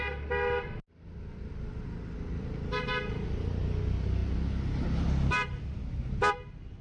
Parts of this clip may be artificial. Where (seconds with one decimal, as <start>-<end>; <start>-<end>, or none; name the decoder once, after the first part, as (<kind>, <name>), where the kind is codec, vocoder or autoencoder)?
none